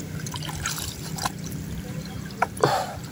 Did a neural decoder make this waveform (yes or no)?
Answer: yes